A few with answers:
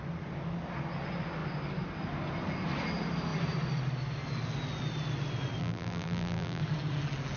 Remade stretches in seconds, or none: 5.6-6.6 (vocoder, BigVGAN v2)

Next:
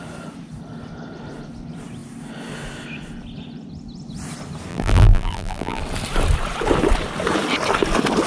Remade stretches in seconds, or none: 4.7-5.8 (vocoder, BigVGAN v2)